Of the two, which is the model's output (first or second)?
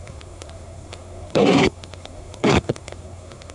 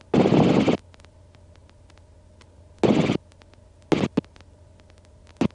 first